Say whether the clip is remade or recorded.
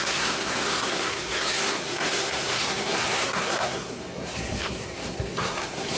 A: remade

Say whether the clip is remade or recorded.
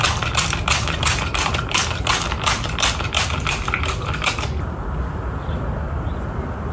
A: recorded